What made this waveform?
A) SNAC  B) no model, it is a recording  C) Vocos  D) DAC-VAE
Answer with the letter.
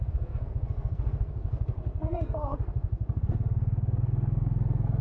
A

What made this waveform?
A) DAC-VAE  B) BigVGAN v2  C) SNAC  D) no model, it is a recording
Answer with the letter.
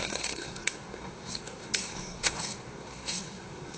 C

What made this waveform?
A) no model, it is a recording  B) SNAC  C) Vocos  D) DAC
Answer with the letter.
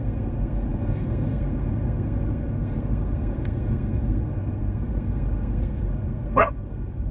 B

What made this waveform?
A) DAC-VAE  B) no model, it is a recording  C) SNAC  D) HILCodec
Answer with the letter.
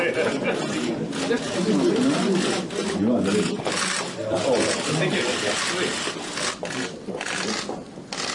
B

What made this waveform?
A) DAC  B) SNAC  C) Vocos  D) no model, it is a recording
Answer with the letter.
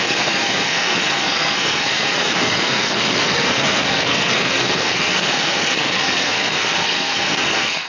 B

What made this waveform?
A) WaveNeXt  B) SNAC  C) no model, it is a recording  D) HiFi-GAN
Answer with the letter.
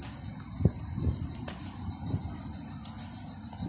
C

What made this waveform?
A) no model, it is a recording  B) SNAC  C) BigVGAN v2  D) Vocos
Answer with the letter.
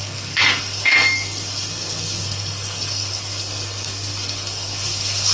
B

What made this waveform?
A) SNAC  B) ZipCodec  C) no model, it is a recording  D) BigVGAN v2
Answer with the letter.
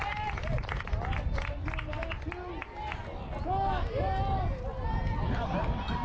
C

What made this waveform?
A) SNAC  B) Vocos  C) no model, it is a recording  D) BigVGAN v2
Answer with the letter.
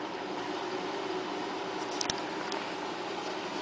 C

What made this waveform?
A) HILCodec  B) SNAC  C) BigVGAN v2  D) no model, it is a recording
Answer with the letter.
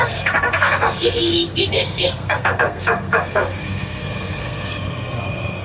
B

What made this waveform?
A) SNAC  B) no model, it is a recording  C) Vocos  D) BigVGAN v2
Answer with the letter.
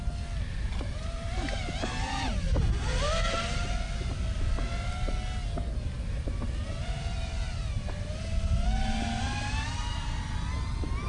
B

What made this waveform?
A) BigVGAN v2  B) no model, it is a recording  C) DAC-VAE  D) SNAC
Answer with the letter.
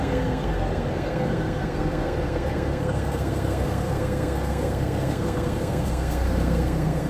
D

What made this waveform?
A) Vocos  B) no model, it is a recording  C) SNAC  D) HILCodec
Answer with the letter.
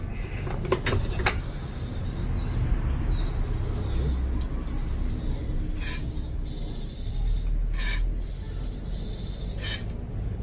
B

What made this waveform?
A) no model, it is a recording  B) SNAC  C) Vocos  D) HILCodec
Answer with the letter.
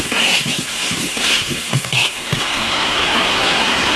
B